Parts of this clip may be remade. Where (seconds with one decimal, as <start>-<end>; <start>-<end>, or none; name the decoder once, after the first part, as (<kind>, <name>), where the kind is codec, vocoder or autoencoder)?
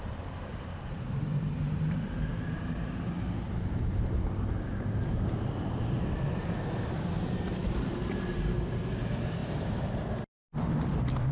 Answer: 0.5-3.5 (vocoder, BigVGAN v2); 9.4-10.0